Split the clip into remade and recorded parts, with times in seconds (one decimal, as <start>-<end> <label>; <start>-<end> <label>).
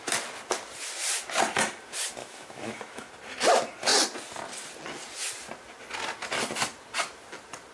0.0-2.2 recorded; 2.2-3.1 remade; 3.1-7.7 recorded